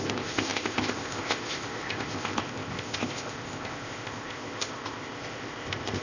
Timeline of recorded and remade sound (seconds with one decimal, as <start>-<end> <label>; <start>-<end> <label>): 0.0-6.0 remade

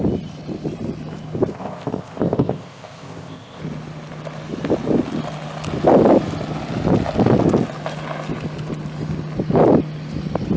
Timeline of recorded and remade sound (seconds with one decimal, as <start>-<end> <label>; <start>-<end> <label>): 0.0-1.5 recorded; 1.5-3.6 remade; 3.6-10.6 recorded